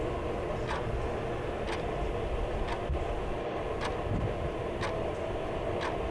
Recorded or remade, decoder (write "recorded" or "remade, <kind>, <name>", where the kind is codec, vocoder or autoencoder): recorded